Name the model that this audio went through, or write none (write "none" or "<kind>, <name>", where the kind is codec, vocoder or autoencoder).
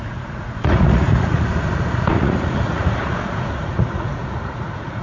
vocoder, Vocos